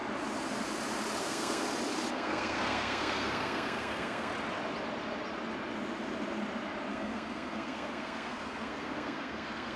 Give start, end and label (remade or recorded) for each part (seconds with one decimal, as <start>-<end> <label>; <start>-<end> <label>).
0.0-1.2 recorded; 1.2-1.6 remade; 1.6-2.1 recorded; 2.1-4.3 remade; 4.3-6.9 recorded; 6.9-9.8 remade